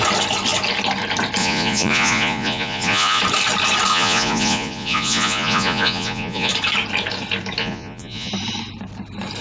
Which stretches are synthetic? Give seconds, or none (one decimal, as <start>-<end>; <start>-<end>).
1.4-3.2; 3.9-6.5; 7.6-8.3

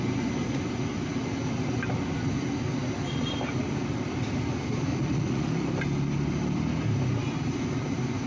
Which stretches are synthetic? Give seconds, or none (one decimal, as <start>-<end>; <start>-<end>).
4.9-5.5